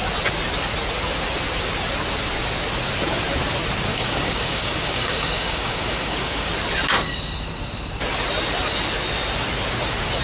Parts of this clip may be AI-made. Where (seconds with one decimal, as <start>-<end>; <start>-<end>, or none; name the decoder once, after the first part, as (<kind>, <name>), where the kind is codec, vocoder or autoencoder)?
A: 3.9-6.5 (codec, DAC)